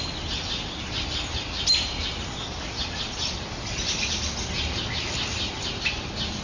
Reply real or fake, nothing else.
real